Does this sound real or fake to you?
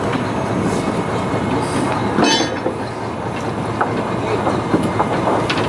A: real